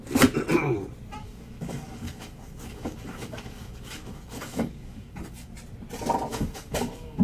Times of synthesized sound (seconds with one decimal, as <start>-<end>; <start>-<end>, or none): 1.2-5.5; 6.3-7.2